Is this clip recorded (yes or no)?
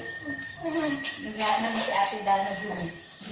no